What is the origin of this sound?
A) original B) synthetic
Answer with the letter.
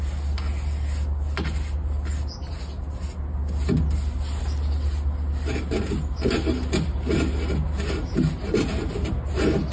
A